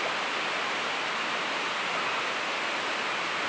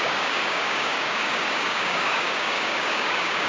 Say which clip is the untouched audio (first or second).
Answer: first